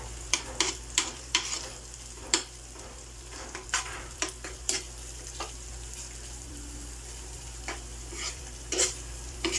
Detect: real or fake fake